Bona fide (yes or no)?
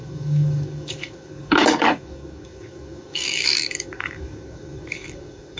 no